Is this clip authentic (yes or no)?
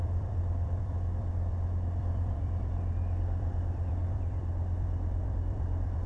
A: no